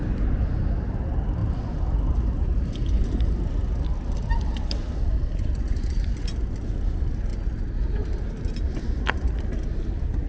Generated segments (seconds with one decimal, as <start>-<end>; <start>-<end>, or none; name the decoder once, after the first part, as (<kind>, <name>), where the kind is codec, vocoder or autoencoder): none